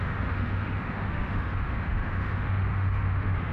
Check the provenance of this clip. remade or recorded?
remade